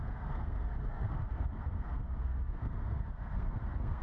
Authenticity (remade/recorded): remade